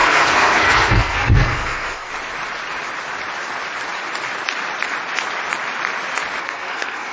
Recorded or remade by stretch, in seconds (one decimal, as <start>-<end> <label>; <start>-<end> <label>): 0.0-2.1 remade; 2.1-6.4 recorded; 6.4-7.1 remade